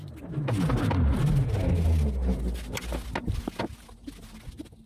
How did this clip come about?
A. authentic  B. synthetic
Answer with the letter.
A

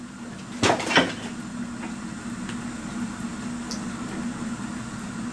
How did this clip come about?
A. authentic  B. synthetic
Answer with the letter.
A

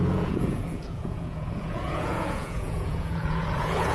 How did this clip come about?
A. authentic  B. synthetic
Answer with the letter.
B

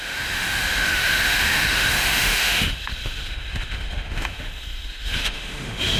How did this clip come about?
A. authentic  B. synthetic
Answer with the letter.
B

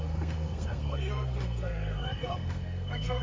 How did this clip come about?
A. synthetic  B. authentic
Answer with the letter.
A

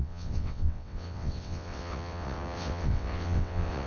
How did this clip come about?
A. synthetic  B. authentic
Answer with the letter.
A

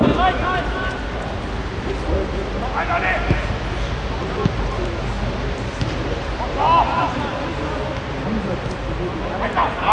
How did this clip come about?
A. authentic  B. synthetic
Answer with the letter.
A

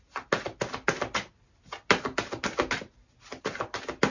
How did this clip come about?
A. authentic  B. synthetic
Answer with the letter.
A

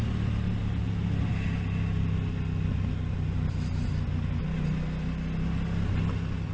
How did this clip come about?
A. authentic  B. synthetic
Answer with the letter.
A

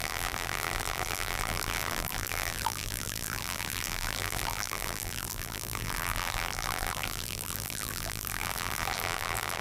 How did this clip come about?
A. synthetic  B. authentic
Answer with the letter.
A